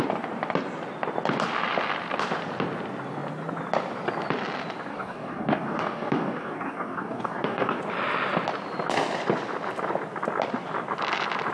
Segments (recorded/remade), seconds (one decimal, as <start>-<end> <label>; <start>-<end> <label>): 0.0-4.9 recorded; 4.9-7.8 remade; 7.8-11.5 recorded